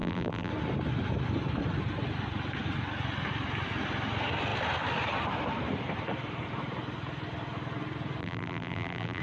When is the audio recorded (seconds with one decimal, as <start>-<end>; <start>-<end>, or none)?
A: 0.5-8.2